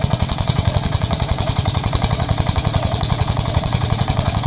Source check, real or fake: fake